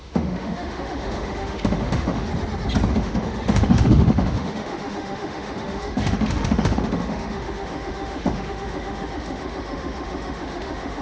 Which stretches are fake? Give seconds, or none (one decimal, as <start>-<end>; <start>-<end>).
0.0-2.3; 2.9-11.0